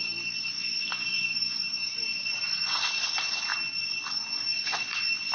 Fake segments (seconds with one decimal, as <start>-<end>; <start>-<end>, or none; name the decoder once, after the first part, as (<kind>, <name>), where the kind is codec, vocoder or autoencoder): none